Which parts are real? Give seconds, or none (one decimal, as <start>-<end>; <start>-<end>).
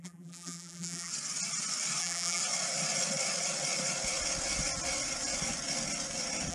1.1-2.0; 2.4-6.5